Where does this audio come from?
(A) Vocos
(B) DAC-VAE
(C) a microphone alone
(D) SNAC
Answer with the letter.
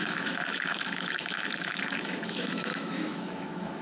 B